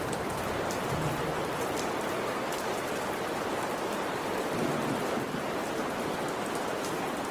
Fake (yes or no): yes